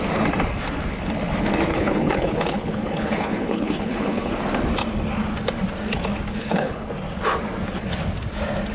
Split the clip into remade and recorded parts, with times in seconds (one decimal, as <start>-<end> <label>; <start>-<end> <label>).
0.0-1.7 recorded; 1.7-4.3 remade; 4.3-6.4 recorded; 6.4-6.9 remade; 6.9-8.7 recorded